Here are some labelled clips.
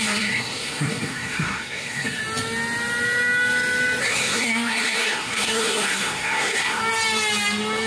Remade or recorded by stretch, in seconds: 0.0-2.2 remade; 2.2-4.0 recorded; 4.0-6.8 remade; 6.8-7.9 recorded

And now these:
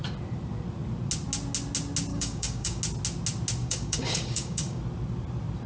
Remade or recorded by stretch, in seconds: 0.0-2.1 recorded; 2.1-2.8 remade; 2.8-3.6 recorded; 3.6-4.8 remade; 4.8-5.7 recorded

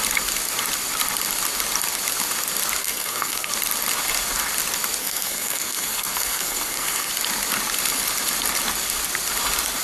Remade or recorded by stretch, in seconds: 0.0-2.8 recorded; 2.8-3.5 remade; 3.5-5.0 recorded; 5.0-7.1 remade; 7.1-9.8 recorded

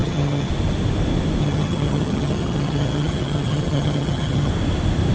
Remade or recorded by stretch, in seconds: 0.0-0.5 remade; 0.5-1.4 recorded; 1.4-4.5 remade; 4.5-5.1 recorded

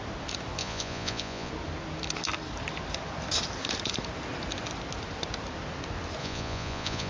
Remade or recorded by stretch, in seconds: 0.0-0.6 recorded; 0.6-1.5 remade; 1.5-6.2 recorded; 6.2-7.1 remade

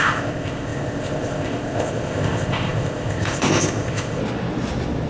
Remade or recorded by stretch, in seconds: 0.0-4.2 remade; 4.2-5.1 recorded